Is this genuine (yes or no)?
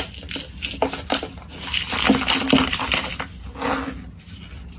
yes